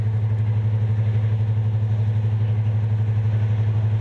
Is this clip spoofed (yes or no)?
no